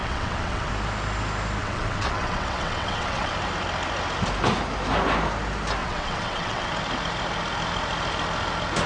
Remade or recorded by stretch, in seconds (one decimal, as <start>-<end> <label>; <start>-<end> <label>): 0.0-0.7 remade; 0.7-1.6 recorded; 1.6-3.3 remade; 3.3-5.8 recorded; 5.8-6.7 remade; 6.7-8.9 recorded